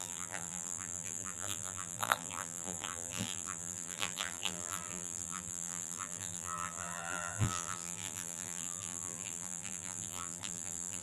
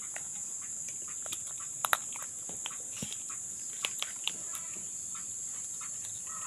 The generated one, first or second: first